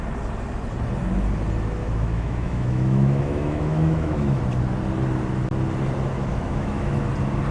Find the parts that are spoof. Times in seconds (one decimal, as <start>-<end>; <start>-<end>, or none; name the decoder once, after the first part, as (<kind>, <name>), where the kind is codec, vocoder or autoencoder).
1.8-4.4 (autoencoder, DAC-VAE); 6.3-7.1